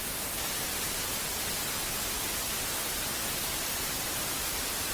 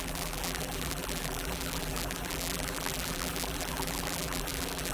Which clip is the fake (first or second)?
second